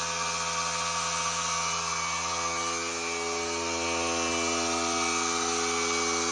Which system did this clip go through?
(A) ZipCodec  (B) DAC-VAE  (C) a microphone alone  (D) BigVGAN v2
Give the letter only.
C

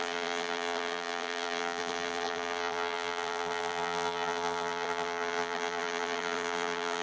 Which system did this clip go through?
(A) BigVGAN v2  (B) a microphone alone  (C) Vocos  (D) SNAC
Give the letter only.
A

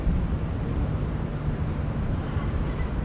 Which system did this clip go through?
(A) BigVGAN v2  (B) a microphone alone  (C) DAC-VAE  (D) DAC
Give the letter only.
A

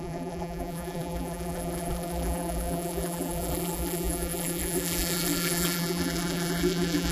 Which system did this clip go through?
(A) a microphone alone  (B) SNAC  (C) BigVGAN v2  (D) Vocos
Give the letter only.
C